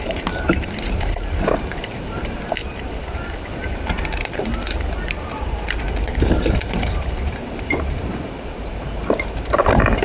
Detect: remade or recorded remade